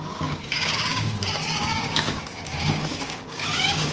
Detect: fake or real fake